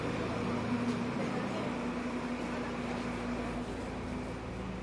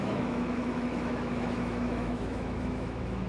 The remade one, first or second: second